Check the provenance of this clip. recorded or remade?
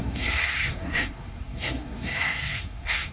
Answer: remade